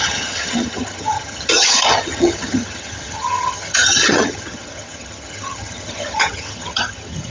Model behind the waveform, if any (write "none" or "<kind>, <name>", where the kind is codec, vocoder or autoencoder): vocoder, HiFi-GAN